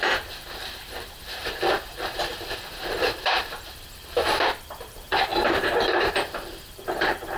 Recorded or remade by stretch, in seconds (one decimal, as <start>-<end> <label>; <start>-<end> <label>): 0.0-7.4 remade